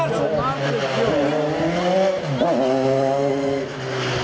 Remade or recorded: recorded